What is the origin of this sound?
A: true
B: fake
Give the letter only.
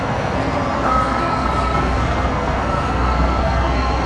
B